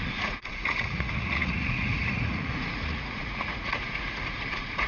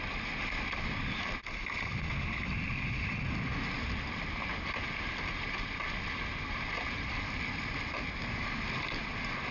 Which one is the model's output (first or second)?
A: first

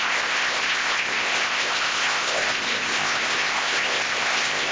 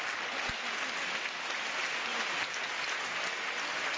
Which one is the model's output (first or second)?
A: first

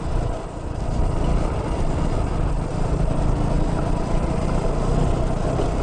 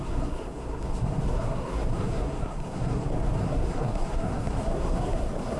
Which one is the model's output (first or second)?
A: second